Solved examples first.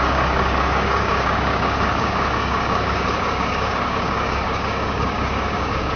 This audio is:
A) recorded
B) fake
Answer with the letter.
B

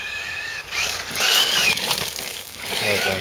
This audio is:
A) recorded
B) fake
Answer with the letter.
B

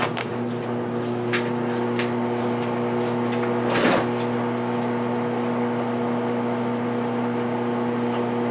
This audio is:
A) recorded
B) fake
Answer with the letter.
A